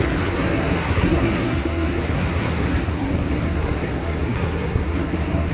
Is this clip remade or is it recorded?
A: remade